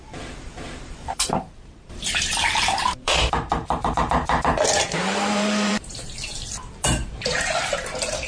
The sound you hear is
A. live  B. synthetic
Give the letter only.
B